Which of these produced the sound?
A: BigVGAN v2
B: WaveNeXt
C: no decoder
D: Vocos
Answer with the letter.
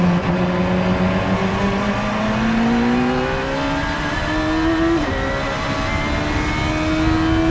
C